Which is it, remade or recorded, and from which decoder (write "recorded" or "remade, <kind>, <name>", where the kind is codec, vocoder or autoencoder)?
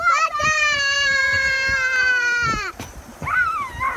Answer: remade, vocoder, BigVGAN v2